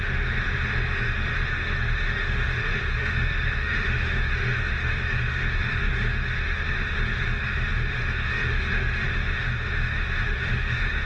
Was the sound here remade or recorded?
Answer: remade